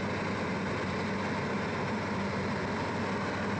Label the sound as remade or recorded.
recorded